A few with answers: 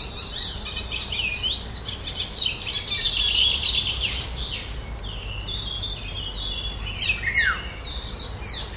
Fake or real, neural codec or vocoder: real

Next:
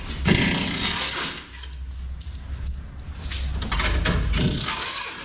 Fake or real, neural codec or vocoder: real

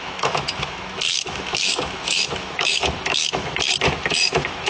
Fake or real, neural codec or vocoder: fake, autoencoder, DAC-VAE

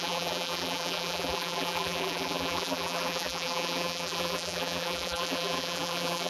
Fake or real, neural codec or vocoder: fake, vocoder, BigVGAN v2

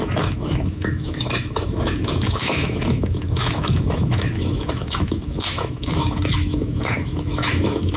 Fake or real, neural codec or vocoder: fake, autoencoder, DAC-VAE